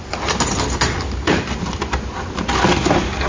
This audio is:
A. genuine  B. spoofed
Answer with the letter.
A